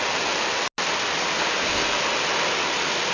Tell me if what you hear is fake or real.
real